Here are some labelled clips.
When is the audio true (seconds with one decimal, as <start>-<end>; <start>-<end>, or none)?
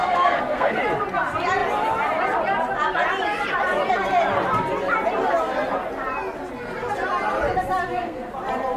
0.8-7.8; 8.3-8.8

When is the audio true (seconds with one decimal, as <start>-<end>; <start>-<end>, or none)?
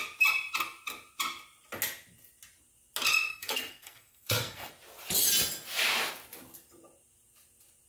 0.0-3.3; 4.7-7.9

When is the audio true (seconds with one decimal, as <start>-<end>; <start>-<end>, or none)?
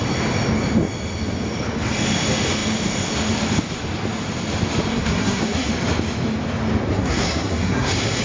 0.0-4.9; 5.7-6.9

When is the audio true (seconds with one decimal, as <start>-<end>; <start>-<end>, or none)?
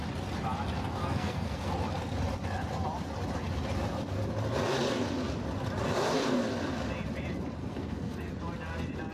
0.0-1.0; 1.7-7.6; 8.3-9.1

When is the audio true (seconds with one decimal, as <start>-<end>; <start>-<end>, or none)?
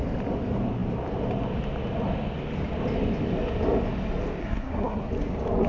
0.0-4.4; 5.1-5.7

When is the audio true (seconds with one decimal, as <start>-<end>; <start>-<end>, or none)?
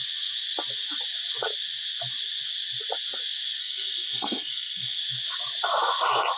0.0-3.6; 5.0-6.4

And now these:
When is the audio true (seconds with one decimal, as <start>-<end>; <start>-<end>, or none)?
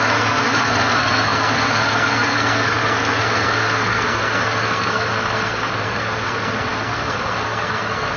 none